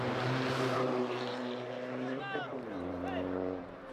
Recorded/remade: remade